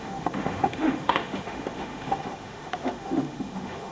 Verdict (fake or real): fake